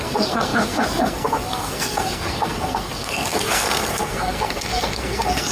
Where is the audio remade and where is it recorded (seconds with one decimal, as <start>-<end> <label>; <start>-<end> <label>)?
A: 0.0-5.5 remade